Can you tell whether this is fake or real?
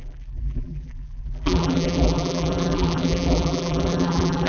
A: fake